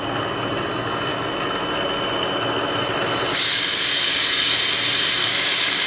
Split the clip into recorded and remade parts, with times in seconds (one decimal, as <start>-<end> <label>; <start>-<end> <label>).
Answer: 0.0-3.3 recorded; 3.3-4.6 remade; 4.6-5.2 recorded; 5.2-5.9 remade